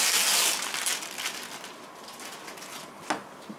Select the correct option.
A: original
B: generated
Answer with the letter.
A